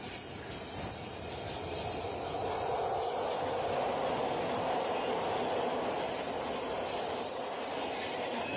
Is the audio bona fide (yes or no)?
yes